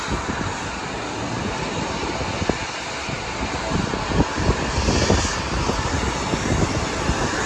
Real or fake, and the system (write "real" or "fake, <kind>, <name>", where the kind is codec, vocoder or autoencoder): real